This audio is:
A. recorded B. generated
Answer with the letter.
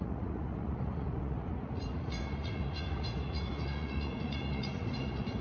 B